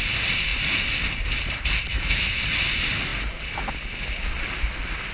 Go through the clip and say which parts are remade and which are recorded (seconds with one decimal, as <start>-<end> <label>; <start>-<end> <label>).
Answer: 0.0-1.9 recorded; 1.9-2.4 remade; 2.4-5.1 recorded

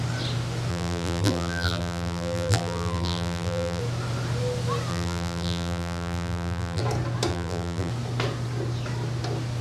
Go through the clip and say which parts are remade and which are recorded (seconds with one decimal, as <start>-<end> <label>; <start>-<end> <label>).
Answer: 0.0-0.7 recorded; 0.7-3.8 remade; 3.8-4.9 recorded; 4.9-6.8 remade; 6.8-7.3 recorded; 7.3-7.9 remade; 7.9-9.6 recorded

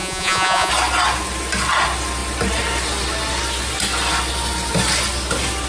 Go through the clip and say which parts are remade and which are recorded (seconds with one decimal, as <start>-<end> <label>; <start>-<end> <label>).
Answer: 0.0-0.7 remade; 0.7-5.7 recorded

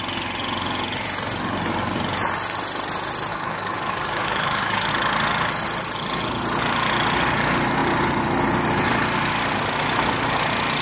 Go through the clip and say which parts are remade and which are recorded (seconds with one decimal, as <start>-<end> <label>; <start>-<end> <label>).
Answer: 0.0-3.3 recorded; 3.3-4.9 remade; 4.9-10.8 recorded

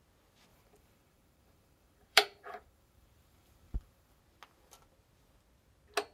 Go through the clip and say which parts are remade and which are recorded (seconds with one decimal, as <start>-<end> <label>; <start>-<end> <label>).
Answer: 0.0-0.5 recorded; 0.5-4.2 remade; 4.2-6.1 recorded